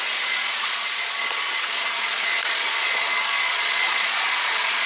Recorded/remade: remade